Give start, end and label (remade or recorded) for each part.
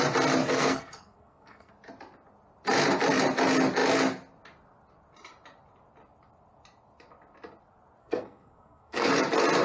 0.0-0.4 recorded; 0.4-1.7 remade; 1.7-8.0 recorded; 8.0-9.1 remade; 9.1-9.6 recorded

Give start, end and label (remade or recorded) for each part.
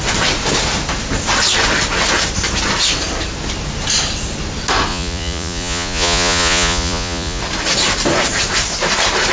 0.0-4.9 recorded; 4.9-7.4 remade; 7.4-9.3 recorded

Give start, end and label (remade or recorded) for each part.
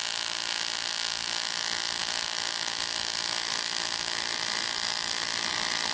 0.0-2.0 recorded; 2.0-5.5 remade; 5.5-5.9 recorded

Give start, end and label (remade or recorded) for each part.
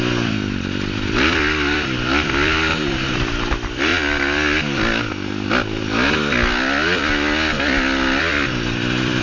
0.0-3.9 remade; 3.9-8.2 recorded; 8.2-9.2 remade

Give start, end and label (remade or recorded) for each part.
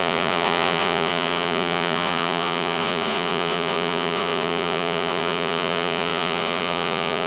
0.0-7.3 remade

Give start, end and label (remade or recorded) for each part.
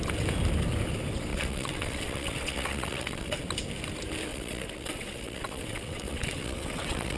0.0-1.3 recorded; 1.3-3.4 remade; 3.4-4.3 recorded; 4.3-7.2 remade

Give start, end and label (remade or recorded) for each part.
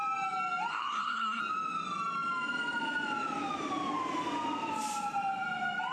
0.0-0.7 recorded; 0.7-1.4 remade; 1.4-5.9 recorded